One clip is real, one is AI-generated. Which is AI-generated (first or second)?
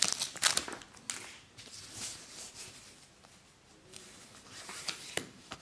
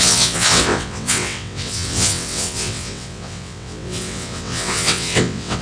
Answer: second